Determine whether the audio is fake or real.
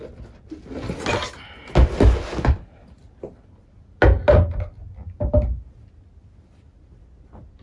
real